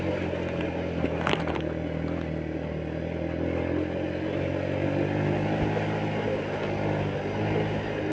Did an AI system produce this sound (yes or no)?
no